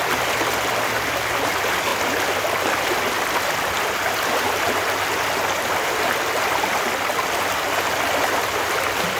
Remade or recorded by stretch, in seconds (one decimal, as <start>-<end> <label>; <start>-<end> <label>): 0.0-9.2 recorded